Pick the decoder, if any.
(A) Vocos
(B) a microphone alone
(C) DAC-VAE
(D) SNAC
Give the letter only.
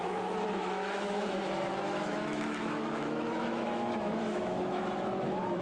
C